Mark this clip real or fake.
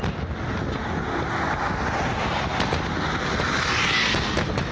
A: real